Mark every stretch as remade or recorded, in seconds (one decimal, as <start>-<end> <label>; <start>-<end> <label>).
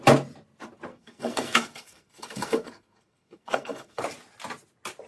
0.0-0.9 recorded; 0.9-4.0 remade; 4.0-5.1 recorded